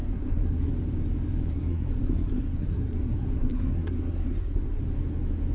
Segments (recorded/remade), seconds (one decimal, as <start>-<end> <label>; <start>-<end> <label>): 0.0-0.7 remade; 0.7-1.5 recorded; 1.5-4.8 remade; 4.8-5.5 recorded

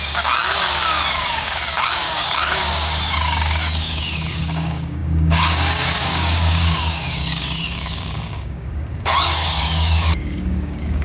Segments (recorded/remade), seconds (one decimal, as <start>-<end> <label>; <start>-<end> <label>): 0.0-11.0 remade

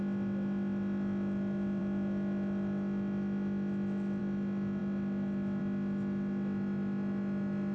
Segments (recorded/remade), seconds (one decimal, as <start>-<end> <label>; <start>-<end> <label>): 0.0-7.7 recorded

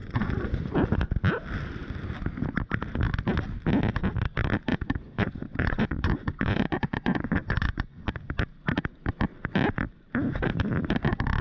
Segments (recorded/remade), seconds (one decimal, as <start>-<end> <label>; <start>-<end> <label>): 0.0-0.7 remade; 0.7-4.7 recorded; 4.7-8.0 remade; 8.0-11.4 recorded

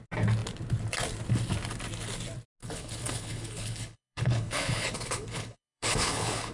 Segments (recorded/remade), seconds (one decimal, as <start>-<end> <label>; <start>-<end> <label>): 0.0-2.6 recorded; 2.6-6.5 remade